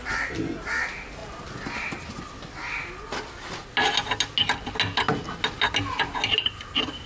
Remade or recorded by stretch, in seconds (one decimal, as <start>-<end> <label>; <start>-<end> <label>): 0.0-7.1 recorded